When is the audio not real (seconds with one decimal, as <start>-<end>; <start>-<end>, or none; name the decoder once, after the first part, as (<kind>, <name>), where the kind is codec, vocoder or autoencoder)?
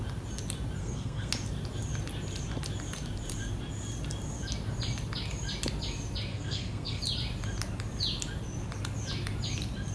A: 0.8-1.3 (codec, SNAC); 6.3-7.0